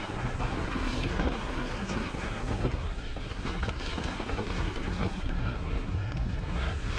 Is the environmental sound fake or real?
fake